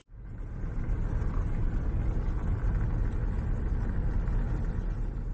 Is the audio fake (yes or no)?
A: no